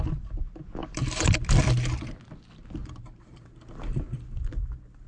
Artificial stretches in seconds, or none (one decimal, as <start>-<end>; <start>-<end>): 0.8-1.6; 2.8-3.8